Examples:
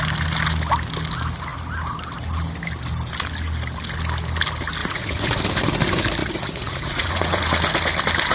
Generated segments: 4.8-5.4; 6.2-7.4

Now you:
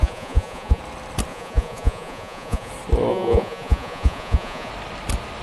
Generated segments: 0.0-0.8; 1.3-2.7; 3.1-4.7

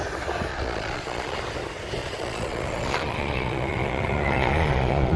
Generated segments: 0.5-1.4; 2.0-5.2

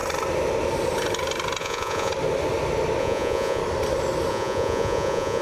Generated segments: 1.6-2.1; 3.0-3.6; 4.3-5.4

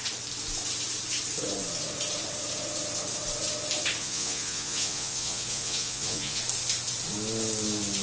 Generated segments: 4.0-6.4